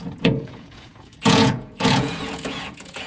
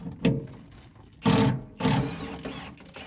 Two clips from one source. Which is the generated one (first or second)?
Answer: first